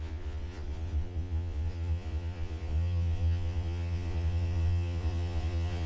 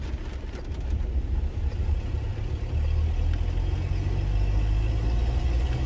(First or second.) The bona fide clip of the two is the second